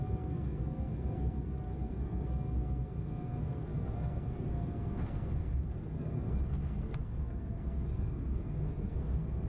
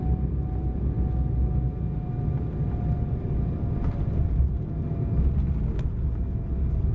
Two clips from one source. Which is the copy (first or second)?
first